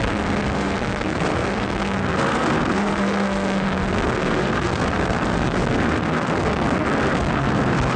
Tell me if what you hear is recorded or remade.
remade